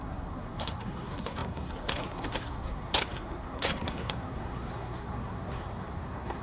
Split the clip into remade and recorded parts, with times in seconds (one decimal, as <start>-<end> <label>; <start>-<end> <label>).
0.0-6.4 remade